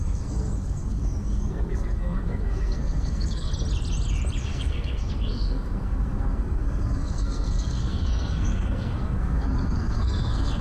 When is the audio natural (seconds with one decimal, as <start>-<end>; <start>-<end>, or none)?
3.5-4.4